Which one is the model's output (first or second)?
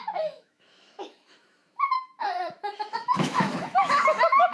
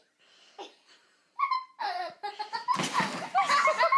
first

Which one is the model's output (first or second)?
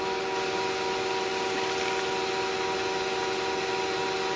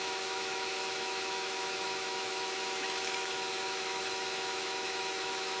second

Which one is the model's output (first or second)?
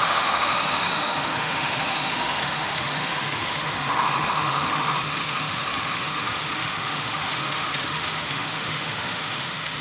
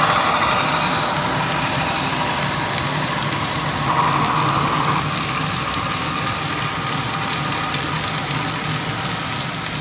first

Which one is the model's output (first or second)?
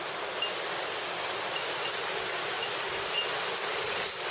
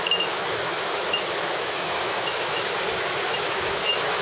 second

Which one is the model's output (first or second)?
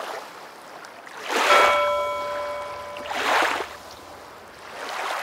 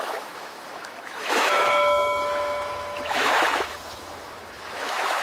second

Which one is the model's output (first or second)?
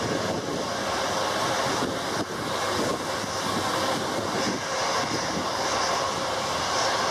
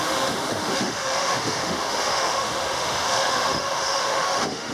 second